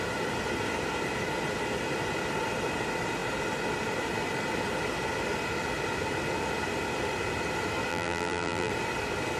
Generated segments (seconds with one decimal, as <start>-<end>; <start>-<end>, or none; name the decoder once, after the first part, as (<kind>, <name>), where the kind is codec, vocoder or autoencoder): 7.9-8.7 (vocoder, BigVGAN v2)